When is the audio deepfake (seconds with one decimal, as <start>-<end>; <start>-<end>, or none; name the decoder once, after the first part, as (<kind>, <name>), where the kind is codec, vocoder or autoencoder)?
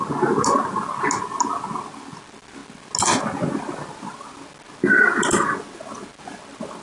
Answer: none